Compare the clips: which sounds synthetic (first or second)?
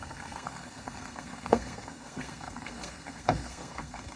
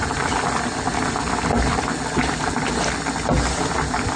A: first